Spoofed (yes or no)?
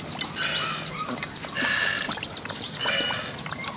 no